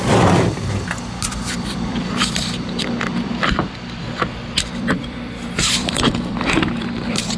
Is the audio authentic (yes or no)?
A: no